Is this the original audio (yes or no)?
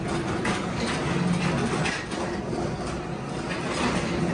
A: yes